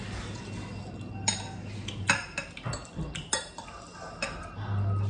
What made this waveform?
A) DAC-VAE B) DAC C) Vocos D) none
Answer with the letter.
D